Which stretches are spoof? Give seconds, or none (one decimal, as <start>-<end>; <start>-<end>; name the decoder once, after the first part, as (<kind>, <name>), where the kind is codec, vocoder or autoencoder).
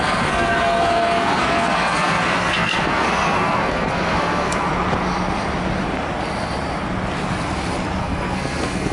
0.0-4.7 (codec, SNAC); 8.0-8.9